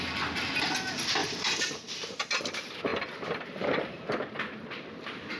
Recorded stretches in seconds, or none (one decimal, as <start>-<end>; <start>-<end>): 0.0-1.2; 2.2-2.9